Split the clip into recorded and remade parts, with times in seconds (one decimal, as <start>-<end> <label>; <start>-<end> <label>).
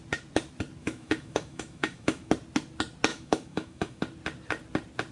0.0-0.8 recorded; 0.8-2.3 remade; 2.3-3.1 recorded; 3.1-4.0 remade; 4.0-5.1 recorded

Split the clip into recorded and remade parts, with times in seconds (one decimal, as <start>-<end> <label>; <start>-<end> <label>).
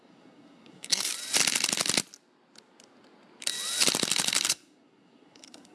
0.0-1.1 remade; 1.1-4.5 recorded; 4.5-5.7 remade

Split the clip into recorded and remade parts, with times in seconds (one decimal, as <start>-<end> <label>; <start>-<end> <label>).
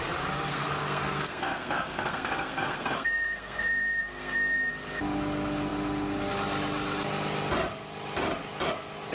0.0-0.5 recorded; 0.5-4.7 remade; 4.7-9.1 recorded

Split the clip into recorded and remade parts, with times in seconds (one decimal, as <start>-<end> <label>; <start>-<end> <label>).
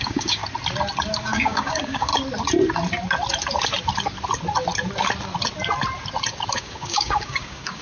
0.0-0.4 remade; 0.4-1.2 recorded; 1.2-2.1 remade; 2.1-6.5 recorded; 6.5-7.8 remade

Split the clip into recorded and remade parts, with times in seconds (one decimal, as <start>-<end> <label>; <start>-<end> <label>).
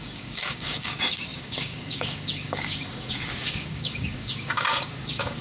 0.0-5.4 remade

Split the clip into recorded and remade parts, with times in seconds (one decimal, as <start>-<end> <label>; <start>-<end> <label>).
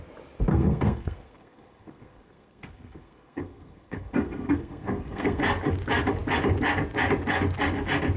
0.0-0.5 recorded; 0.5-5.4 remade; 5.4-8.2 recorded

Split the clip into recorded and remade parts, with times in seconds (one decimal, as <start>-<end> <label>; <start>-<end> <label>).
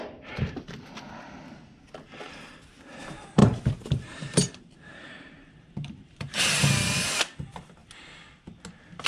0.0-3.4 recorded; 3.4-6.4 remade; 6.4-9.1 recorded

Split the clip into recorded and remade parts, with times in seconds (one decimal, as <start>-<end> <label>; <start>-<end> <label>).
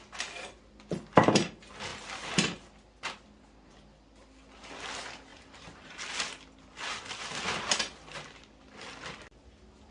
0.0-5.3 recorded; 5.3-6.0 remade; 6.0-9.9 recorded